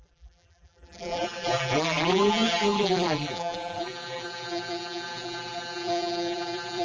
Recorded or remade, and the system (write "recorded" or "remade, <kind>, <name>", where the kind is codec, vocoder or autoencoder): remade, vocoder, BigVGAN v2